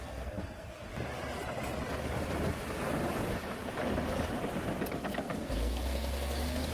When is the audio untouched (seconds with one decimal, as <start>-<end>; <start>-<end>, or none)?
0.9-4.9